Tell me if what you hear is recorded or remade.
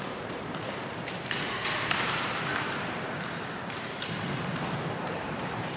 remade